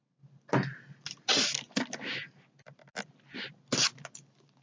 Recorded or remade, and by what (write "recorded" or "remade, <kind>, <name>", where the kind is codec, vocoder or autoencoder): recorded